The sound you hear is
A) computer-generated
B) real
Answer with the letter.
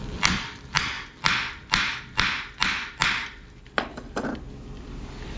B